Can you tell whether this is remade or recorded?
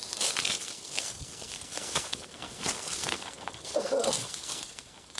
remade